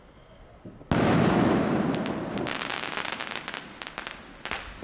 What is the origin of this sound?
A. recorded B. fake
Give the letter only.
A